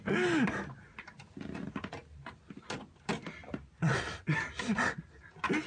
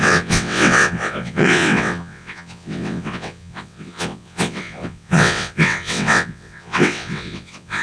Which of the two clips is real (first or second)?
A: first